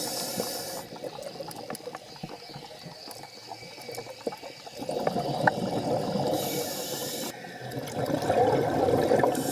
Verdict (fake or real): real